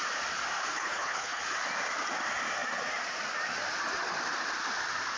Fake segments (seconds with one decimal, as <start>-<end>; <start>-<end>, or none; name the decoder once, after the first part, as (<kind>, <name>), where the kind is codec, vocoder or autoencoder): 0.7-1.4 (codec, HILCodec)